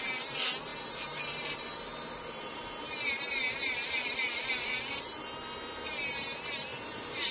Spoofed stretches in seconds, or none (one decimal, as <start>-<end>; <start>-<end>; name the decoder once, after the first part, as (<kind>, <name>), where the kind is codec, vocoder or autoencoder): 0.7-4.8 (vocoder, BigVGAN v2); 6.7-7.3